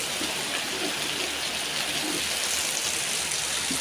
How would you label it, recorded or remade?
recorded